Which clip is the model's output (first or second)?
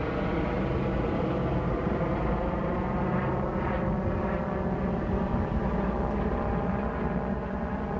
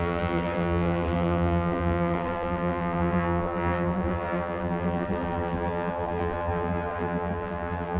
second